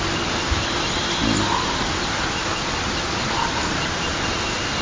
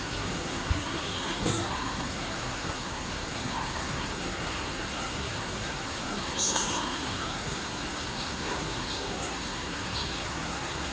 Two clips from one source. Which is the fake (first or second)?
second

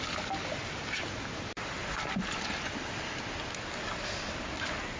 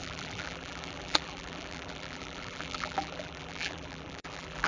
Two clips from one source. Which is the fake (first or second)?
second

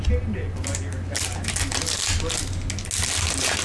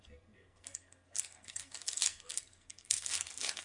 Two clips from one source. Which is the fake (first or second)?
second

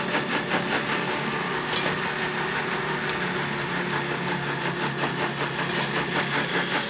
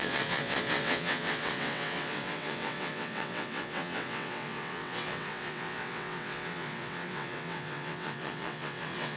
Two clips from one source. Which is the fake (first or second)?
second